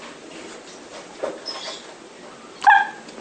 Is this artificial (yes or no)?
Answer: no